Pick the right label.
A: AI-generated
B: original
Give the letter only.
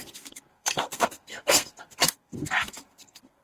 A